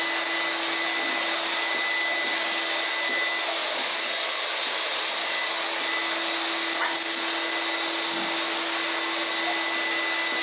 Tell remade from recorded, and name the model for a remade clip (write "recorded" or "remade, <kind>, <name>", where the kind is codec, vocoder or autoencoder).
recorded